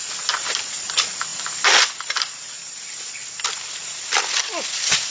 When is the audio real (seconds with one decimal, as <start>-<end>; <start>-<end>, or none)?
none